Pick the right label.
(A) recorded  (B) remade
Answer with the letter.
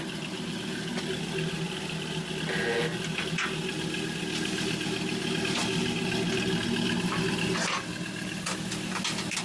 A